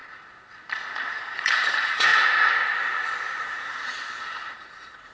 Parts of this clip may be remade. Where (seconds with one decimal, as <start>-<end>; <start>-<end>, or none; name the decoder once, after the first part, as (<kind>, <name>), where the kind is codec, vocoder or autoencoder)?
1.1-2.1 (vocoder, Vocos); 3.4-5.1